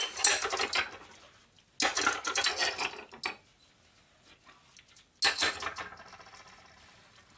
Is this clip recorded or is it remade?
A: recorded